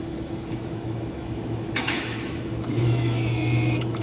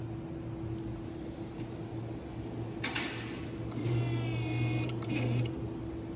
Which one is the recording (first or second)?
second